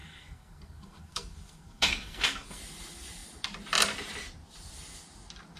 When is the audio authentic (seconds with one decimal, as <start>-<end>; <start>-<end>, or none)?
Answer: 2.6-5.6